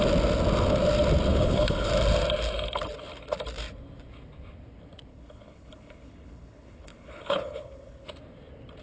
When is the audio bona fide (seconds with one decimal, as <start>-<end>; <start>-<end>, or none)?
0.0-1.3; 1.9-5.1; 8.1-8.8